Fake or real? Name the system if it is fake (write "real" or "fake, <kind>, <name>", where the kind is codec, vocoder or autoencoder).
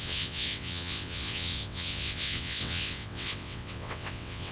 fake, vocoder, WaveNeXt